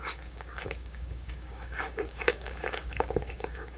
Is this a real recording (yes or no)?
no